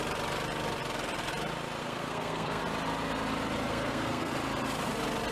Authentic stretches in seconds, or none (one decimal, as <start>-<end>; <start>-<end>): 0.0-1.8; 2.6-3.7; 4.3-5.3